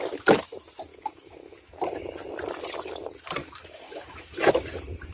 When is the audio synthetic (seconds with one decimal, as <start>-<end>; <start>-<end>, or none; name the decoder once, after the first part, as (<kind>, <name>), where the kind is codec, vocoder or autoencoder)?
0.9-1.8 (autoencoder, DAC-VAE); 3.4-4.5